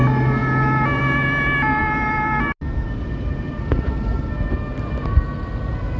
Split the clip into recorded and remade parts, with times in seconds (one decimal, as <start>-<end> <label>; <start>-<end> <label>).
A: 0.0-6.0 recorded